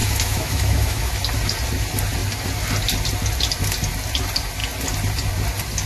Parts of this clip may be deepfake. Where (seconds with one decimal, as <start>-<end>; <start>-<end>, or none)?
0.0-1.1